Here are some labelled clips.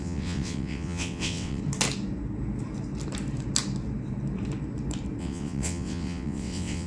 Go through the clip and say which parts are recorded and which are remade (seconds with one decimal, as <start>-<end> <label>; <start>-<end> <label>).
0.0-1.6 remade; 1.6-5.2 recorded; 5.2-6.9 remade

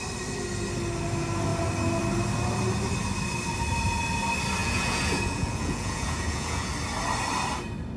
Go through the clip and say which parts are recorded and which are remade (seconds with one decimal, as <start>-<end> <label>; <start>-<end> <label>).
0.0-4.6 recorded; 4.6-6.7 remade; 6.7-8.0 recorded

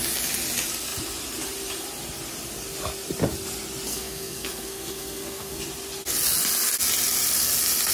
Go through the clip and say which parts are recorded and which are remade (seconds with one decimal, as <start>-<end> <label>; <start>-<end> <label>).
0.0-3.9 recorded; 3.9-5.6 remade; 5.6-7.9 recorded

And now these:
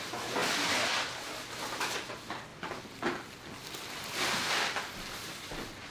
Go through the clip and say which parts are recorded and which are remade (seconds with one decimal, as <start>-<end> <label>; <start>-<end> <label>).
0.0-5.9 recorded